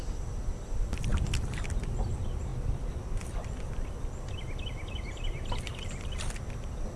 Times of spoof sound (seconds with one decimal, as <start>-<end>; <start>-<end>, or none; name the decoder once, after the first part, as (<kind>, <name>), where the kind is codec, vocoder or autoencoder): 0.0-1.1 (vocoder, BigVGAN v2); 2.1-2.5; 3.6-7.0